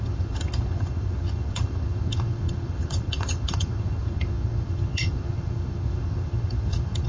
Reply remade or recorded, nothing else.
remade